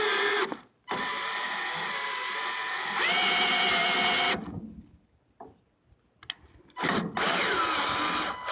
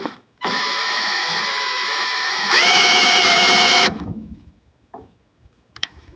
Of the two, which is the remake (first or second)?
second